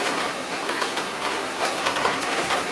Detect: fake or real fake